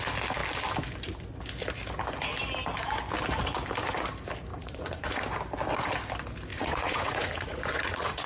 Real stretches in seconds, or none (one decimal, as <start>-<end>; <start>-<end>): 0.0-4.5; 5.2-6.5